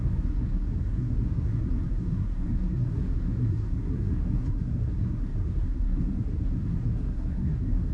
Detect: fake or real fake